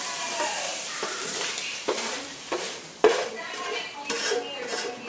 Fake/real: fake